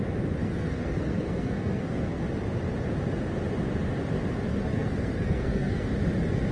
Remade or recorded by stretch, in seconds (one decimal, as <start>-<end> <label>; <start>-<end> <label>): 0.0-0.4 recorded; 0.4-2.2 remade; 2.2-4.5 recorded; 4.5-5.9 remade; 5.9-6.5 recorded